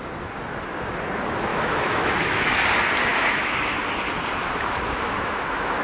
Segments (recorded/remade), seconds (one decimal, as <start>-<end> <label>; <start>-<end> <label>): 0.0-1.5 recorded; 1.5-2.5 remade; 2.5-3.1 recorded; 3.1-3.8 remade; 3.8-4.4 recorded; 4.4-5.8 remade